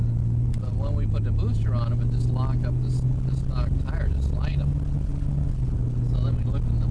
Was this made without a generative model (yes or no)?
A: yes